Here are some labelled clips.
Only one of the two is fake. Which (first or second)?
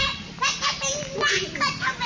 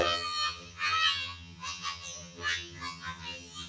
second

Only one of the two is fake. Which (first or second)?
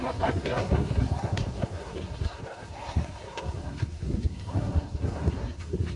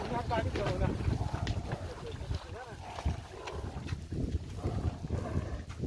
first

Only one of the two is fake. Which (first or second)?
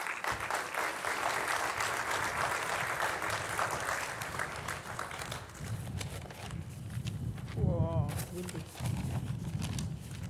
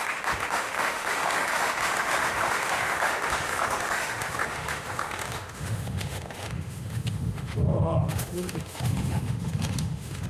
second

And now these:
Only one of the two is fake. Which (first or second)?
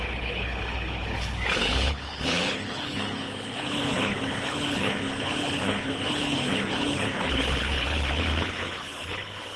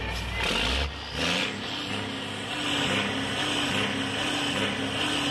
first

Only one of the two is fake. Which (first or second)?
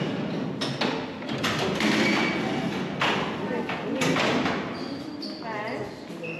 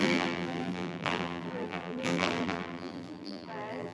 second